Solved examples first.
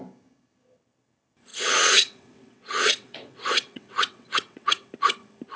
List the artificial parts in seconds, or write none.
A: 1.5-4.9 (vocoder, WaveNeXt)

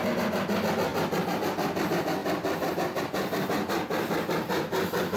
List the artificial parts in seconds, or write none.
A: none

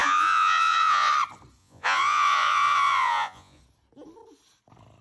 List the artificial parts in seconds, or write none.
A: 0.0-1.1 (vocoder, Vocos); 1.6-3.6

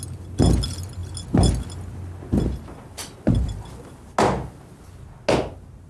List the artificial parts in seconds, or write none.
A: none

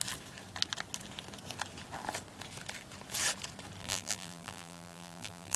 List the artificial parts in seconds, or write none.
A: 3.8-5.6 (vocoder, BigVGAN v2)

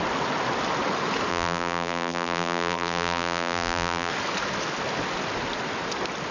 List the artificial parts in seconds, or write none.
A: 1.3-4.1 (vocoder, BigVGAN v2)

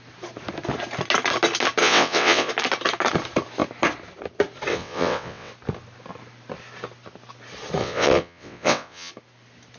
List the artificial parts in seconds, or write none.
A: 1.8-2.5 (vocoder, WaveNeXt); 4.7-5.5; 7.8-9.1